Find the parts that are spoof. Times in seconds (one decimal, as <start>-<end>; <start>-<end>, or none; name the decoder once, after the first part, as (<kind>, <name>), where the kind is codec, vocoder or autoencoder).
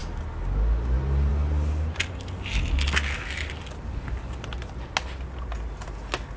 none